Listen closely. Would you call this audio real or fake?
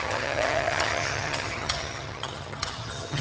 fake